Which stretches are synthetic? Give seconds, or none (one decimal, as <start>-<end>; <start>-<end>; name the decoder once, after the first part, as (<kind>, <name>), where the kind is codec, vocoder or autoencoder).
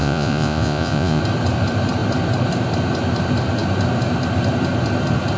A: 0.0-1.2 (vocoder, Vocos)